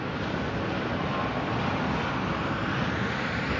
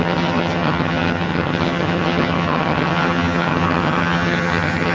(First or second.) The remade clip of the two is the second